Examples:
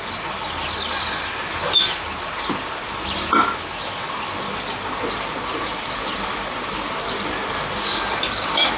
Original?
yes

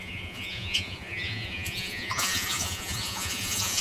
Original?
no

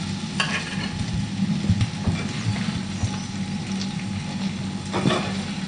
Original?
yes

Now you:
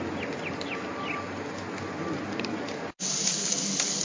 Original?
yes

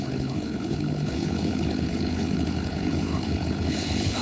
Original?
no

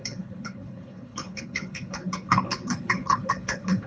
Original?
no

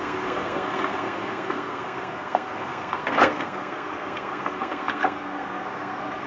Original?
no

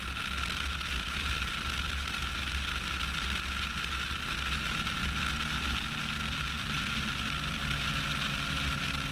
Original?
yes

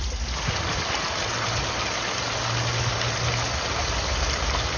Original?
yes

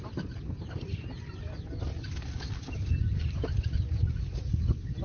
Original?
yes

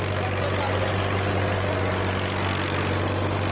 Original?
yes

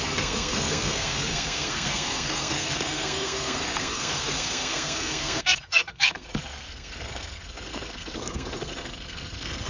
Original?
no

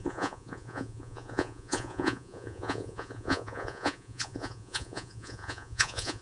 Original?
no